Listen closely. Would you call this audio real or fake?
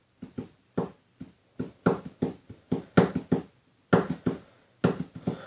real